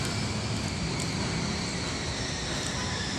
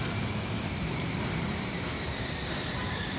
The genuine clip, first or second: first